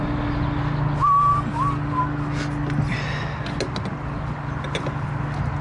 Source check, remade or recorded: recorded